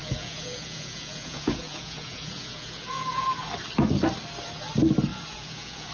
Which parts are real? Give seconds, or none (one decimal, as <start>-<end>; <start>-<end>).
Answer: 3.5-5.1